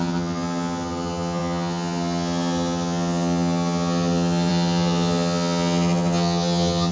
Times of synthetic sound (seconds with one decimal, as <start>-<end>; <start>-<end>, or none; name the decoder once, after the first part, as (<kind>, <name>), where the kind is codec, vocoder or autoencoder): 0.0-6.9 (vocoder, HiFi-GAN)